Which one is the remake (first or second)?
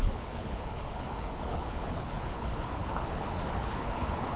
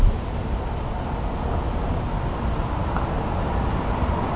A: first